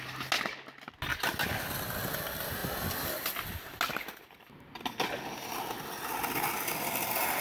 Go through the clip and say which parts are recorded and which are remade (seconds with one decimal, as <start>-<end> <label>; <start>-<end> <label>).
0.0-7.4 recorded